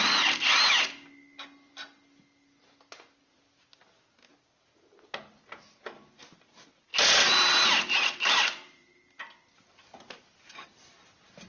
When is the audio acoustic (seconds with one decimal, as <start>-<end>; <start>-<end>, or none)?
0.0-11.5

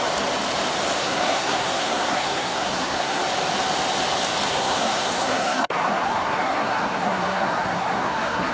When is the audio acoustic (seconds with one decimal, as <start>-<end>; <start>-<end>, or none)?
0.0-1.0; 3.2-4.5

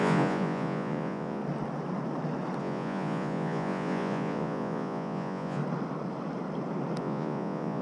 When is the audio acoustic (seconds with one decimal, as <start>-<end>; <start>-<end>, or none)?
1.4-2.6; 5.6-7.0

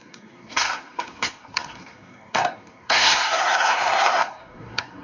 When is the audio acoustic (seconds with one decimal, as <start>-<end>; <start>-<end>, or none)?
none

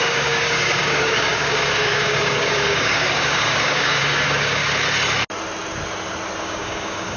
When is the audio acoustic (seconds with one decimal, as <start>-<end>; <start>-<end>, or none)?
4.6-6.4

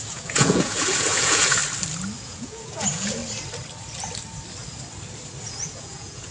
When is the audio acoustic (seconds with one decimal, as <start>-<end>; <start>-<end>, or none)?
1.6-2.2; 3.2-5.4

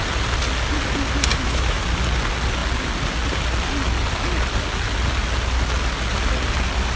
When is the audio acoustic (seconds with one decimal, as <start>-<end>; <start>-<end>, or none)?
0.0-1.3; 1.8-7.0

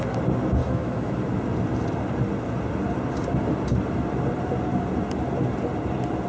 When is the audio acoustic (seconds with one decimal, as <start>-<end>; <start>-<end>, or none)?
0.0-0.6; 1.2-6.3